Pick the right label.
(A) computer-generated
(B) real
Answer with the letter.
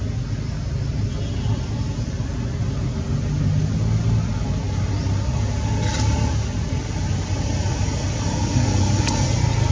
B